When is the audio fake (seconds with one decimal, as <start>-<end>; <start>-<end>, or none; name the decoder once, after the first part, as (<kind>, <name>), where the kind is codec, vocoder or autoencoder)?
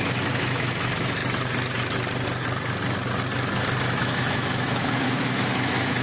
0.0-1.2 (autoencoder, DAC-VAE); 3.8-6.0